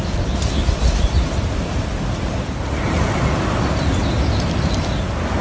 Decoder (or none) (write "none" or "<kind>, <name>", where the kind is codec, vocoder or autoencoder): none